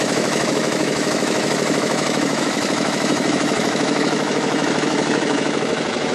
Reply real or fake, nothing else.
fake